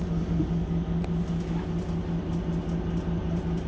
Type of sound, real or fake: real